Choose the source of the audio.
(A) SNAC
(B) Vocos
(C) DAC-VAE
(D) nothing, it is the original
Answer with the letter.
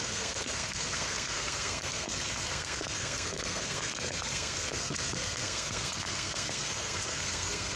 A